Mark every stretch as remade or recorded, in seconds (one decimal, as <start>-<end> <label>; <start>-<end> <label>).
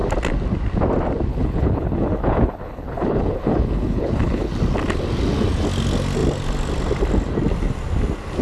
0.0-1.3 recorded; 1.3-4.5 remade; 4.5-8.4 recorded